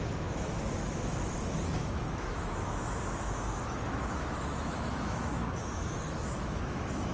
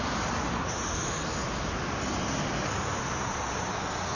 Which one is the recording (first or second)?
second